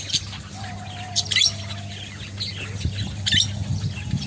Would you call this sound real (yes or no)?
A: yes